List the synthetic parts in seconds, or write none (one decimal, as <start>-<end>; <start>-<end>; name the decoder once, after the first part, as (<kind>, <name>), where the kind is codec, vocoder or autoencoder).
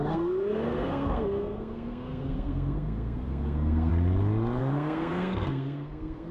0.0-3.9 (codec, SNAC); 4.6-6.3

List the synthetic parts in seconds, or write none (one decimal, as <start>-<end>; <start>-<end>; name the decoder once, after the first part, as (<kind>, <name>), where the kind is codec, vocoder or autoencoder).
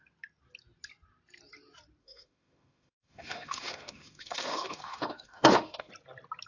2.0-5.9 (autoencoder, DAC-VAE)